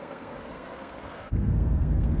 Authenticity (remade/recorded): remade